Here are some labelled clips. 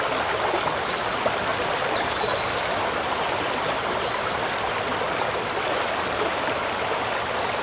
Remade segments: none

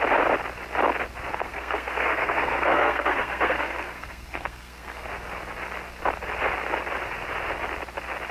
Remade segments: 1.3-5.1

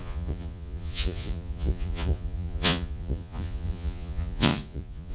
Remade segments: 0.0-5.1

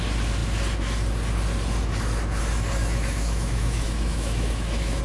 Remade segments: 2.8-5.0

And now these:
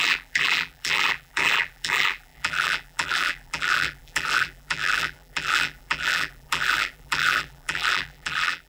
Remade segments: 0.0-8.7

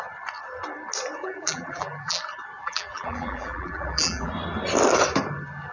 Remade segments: 1.2-2.2; 2.6-4.3

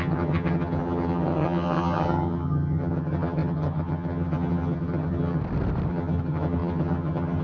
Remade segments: 0.0-5.4; 5.9-7.4

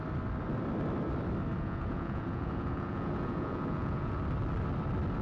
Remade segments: 1.5-4.2